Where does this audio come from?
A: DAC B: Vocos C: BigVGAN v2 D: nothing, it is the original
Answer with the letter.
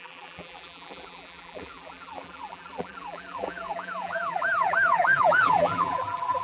C